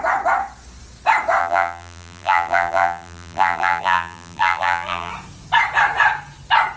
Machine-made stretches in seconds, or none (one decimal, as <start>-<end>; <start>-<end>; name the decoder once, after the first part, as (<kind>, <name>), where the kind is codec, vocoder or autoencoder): 1.4-5.1 (vocoder, BigVGAN v2)